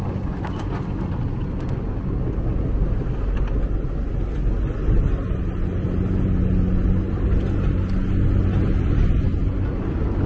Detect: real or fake real